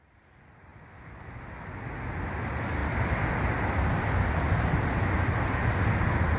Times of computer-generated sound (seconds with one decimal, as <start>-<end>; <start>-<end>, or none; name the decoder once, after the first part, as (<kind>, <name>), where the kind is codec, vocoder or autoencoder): 0.7-1.5 (vocoder, BigVGAN v2); 2.8-4.1